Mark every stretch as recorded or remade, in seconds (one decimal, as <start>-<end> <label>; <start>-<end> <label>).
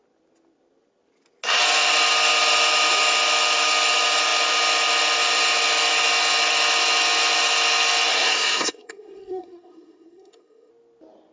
0.0-8.1 recorded; 8.1-10.7 remade; 10.7-11.3 recorded